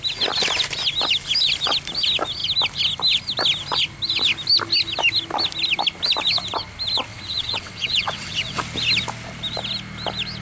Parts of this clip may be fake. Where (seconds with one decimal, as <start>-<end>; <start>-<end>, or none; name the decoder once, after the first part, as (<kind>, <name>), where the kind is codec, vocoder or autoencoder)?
7.1-8.6 (vocoder, WaveNeXt)